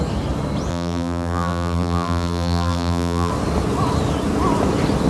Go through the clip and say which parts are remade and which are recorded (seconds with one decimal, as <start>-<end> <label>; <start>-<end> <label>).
0.0-0.7 recorded; 0.7-3.3 remade; 3.3-5.1 recorded